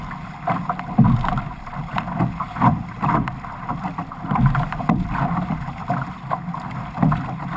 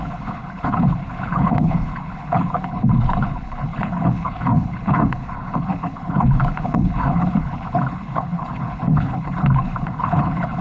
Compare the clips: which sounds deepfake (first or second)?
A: second